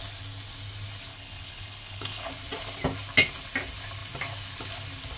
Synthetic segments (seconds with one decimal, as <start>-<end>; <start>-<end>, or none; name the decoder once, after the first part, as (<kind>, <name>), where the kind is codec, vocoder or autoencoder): 1.1-2.3 (codec, HILCodec)